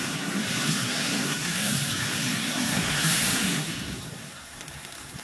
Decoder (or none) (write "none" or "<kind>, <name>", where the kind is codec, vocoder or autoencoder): codec, SNAC